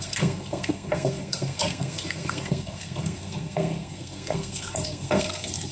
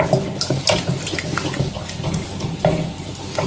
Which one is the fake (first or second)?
first